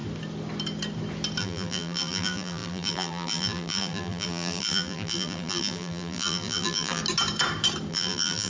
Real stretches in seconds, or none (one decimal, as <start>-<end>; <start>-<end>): 0.0-1.4; 7.0-7.9